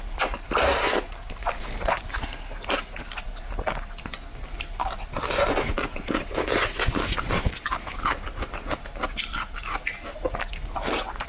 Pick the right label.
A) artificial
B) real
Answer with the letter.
B